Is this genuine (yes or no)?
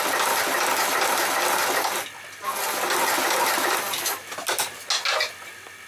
yes